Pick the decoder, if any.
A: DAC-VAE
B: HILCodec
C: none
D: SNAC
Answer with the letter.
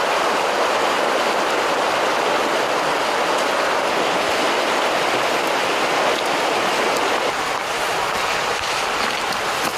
C